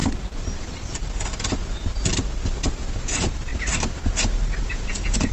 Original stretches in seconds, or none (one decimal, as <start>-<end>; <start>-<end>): 0.0-2.7; 3.5-4.6